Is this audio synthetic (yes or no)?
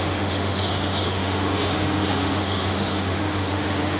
yes